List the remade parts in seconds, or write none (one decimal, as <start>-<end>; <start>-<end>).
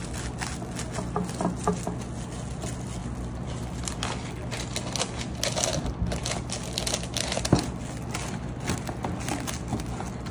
none